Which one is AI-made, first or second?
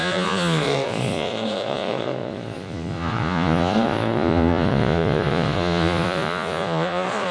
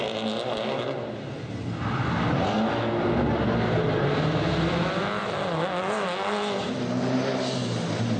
first